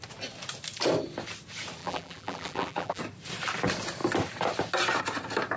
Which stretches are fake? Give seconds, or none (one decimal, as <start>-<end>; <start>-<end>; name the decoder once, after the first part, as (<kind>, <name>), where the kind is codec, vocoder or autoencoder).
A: 1.8-3.0 (vocoder, BigVGAN v2)